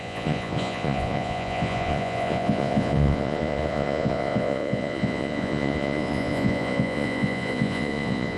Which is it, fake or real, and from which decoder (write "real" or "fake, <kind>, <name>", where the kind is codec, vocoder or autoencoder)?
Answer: fake, vocoder, Vocos